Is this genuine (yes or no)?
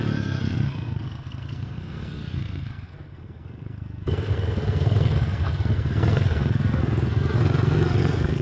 no